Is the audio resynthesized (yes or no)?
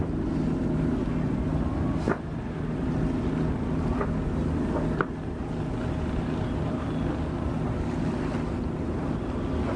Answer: no